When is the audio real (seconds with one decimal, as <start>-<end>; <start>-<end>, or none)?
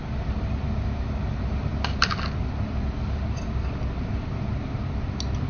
0.0-5.5